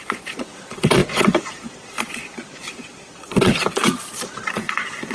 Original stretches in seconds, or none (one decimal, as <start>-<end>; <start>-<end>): none